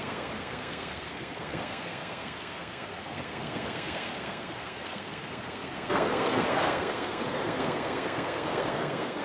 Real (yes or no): no